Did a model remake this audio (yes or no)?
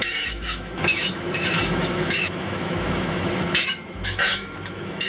yes